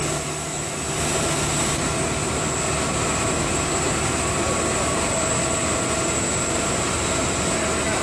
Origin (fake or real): real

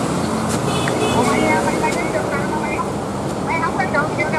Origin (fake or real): real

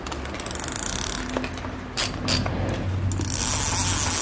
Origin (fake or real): real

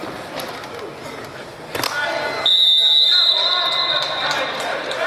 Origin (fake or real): real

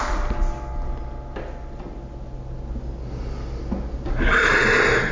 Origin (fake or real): real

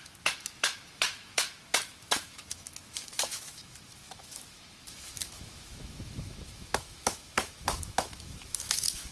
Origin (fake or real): fake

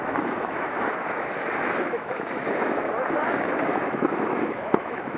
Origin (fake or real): fake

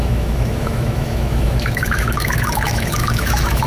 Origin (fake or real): fake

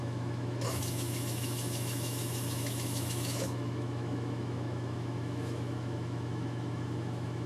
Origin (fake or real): fake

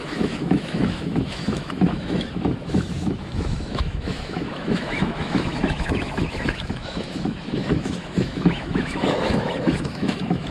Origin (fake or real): fake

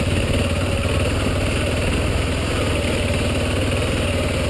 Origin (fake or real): real